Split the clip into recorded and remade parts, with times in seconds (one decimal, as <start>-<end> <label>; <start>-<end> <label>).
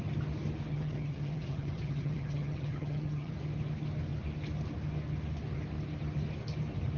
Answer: 0.0-0.7 recorded; 0.7-3.3 remade; 3.3-7.0 recorded